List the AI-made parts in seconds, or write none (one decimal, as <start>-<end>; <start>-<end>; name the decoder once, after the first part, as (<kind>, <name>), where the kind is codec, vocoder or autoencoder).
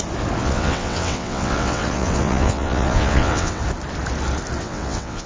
0.4-3.6 (vocoder, WaveNeXt); 4.6-5.3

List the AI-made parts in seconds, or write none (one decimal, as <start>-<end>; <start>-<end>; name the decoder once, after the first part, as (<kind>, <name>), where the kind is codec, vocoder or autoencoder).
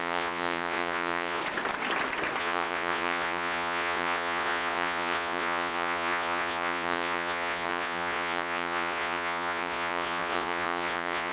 0.0-1.4 (vocoder, Vocos); 2.4-11.3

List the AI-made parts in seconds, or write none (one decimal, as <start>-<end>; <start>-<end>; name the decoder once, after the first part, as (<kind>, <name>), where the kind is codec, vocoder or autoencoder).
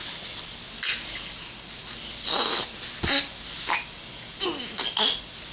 none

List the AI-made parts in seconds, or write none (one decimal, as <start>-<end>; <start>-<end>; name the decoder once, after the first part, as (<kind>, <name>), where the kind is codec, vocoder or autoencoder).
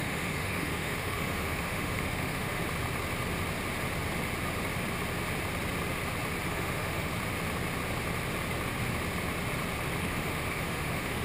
0.0-2.6 (autoencoder, DAC-VAE); 6.5-7.1; 10.0-11.2